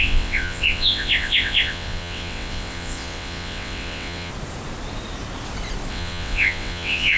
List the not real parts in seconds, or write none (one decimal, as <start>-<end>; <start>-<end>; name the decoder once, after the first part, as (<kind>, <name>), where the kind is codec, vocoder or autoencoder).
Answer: 0.0-4.3 (vocoder, WaveNeXt); 5.9-7.2